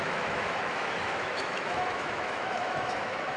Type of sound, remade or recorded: remade